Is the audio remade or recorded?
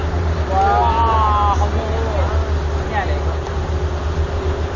recorded